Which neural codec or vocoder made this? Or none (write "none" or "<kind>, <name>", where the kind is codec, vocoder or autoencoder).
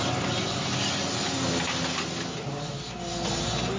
none